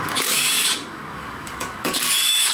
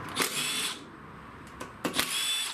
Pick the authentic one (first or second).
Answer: second